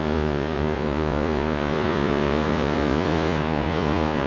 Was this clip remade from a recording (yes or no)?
yes